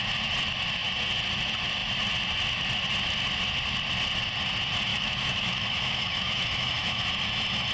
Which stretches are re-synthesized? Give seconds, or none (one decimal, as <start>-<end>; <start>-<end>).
4.9-7.0